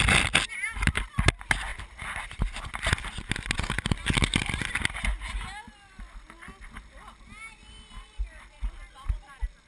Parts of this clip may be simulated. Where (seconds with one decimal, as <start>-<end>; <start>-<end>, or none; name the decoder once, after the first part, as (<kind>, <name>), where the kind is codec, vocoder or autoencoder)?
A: none